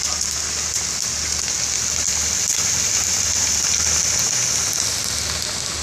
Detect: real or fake real